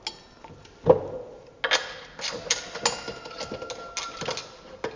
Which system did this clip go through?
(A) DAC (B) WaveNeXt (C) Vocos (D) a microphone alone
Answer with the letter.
D